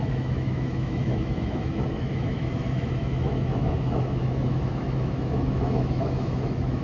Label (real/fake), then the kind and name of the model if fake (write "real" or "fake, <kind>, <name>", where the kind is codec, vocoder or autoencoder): fake, autoencoder, DAC-VAE